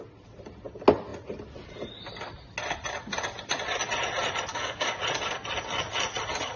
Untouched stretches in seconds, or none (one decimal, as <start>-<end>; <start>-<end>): 0.0-4.5; 5.0-6.6